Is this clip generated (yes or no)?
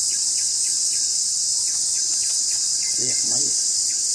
yes